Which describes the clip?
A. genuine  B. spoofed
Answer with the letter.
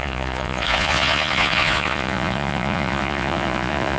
B